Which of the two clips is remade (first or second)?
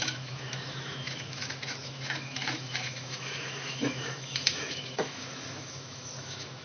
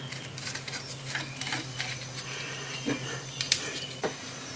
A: first